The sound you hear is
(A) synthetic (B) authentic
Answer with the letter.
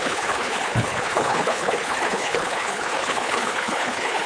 A